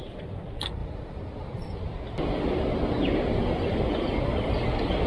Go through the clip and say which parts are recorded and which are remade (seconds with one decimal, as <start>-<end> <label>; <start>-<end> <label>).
0.0-5.1 recorded